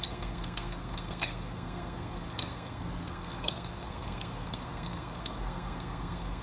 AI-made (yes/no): yes